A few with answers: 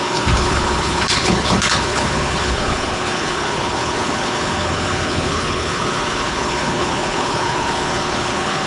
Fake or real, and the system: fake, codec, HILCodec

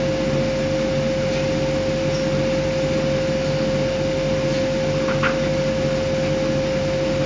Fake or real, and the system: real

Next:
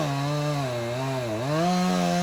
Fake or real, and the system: real